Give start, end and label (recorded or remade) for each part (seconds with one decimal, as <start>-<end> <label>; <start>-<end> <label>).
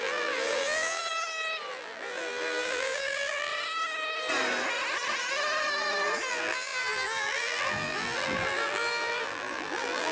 0.0-1.0 remade; 1.0-1.7 recorded; 1.7-3.5 remade; 3.5-6.3 recorded; 6.3-10.1 remade